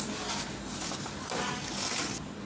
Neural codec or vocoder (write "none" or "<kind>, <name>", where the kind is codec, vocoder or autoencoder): none